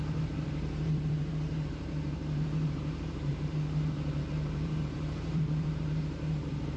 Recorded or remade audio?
remade